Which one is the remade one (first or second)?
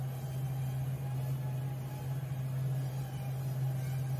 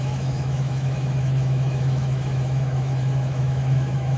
second